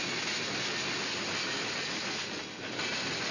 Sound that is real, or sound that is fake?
real